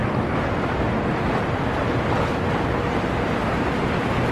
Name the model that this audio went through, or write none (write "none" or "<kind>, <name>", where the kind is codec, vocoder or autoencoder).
none